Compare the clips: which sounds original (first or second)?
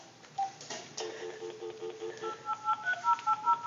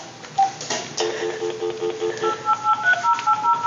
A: second